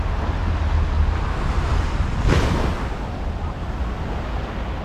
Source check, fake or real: real